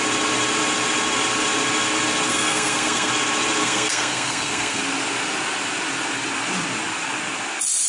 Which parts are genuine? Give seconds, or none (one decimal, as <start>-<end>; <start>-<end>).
0.0-2.3; 3.1-3.6; 4.8-7.9

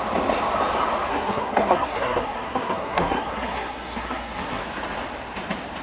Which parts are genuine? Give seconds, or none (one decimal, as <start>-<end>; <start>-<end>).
0.0-1.1; 4.6-5.8

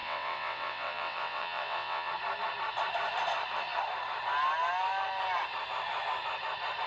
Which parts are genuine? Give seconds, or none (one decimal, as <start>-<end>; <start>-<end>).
2.1-6.9

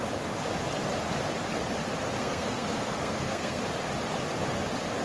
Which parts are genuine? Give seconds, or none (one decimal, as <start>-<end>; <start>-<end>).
0.0-2.2; 3.6-5.0

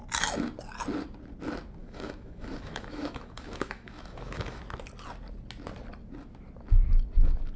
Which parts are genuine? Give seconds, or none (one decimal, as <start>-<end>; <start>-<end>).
0.0-1.8; 4.6-7.6